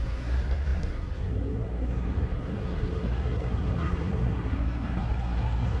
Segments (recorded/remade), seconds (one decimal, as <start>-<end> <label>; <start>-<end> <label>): 0.0-5.8 remade